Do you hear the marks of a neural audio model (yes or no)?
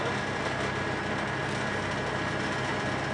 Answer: no